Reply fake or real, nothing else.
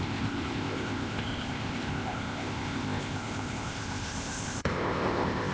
fake